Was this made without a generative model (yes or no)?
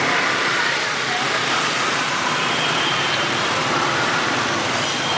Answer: no